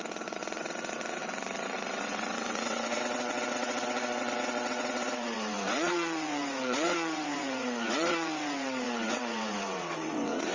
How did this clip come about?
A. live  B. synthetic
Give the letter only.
B